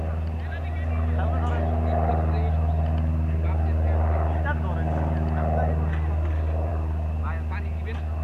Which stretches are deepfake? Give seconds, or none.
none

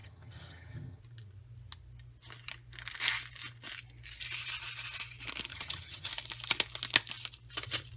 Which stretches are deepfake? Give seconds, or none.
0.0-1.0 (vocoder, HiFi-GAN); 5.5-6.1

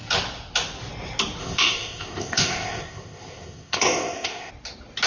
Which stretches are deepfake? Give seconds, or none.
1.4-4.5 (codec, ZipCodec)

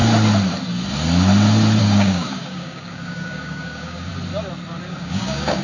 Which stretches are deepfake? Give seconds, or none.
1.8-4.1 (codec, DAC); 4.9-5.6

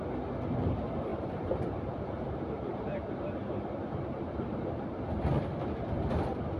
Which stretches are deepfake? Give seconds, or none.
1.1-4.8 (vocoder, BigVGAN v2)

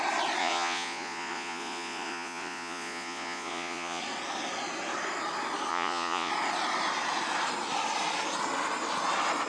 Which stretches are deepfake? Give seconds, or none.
0.4-4.0 (vocoder, Vocos); 5.7-6.3

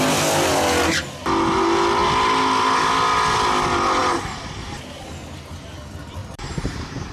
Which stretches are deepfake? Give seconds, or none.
6.2-7.1 (vocoder, BigVGAN v2)

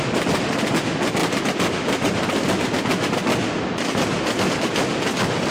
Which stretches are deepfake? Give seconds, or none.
none